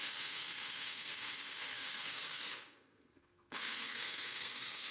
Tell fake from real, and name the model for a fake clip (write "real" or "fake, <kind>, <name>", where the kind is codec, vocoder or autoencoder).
fake, codec, SNAC